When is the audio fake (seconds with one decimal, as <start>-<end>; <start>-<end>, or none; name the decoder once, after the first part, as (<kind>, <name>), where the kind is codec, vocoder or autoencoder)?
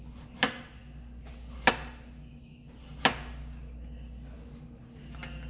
none